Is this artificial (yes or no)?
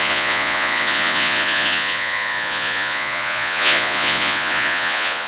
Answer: yes